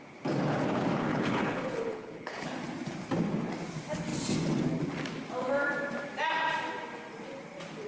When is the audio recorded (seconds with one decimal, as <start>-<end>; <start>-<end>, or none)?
0.0-1.1; 2.5-7.9